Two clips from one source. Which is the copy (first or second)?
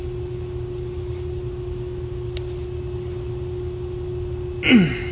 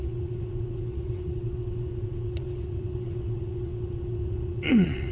second